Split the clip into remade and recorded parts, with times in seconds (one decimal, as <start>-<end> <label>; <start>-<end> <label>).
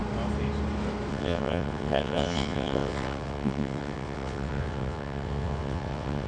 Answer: 0.0-1.1 recorded; 1.1-6.3 remade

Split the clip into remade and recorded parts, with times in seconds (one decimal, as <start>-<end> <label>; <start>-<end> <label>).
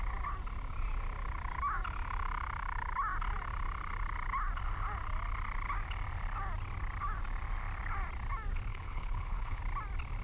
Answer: 0.0-8.7 recorded; 8.7-9.6 remade; 9.6-10.2 recorded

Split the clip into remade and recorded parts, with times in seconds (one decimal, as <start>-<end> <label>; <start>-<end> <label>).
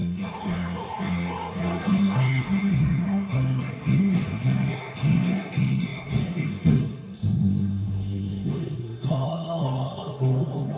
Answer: 0.0-10.8 remade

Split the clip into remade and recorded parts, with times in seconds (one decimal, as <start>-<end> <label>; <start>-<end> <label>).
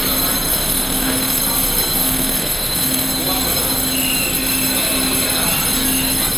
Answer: 0.0-0.6 recorded; 0.6-1.4 remade; 1.4-2.0 recorded; 2.0-3.1 remade; 3.1-6.4 recorded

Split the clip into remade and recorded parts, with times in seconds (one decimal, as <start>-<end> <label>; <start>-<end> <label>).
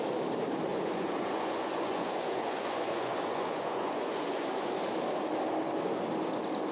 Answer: 0.0-0.7 recorded; 0.7-4.7 remade; 4.7-6.7 recorded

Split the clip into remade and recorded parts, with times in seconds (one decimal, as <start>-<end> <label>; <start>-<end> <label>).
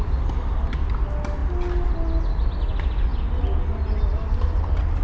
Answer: 0.0-5.0 recorded